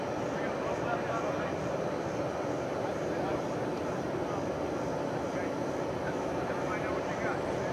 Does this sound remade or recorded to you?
recorded